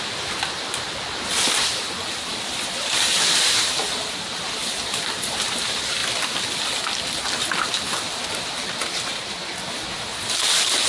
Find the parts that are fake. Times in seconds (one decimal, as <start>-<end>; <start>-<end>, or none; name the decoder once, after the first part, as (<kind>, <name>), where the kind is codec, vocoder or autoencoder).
0.0-6.0 (vocoder, BigVGAN v2); 10.4-10.9